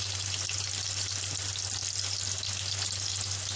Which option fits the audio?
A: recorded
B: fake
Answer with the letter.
A